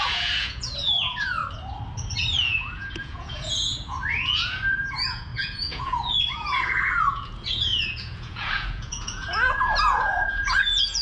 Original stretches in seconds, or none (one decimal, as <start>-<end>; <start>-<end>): 1.4-2.4